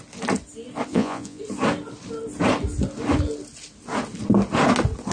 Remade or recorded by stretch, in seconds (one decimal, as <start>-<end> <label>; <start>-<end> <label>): 0.0-0.9 recorded; 0.9-1.4 remade; 1.4-5.1 recorded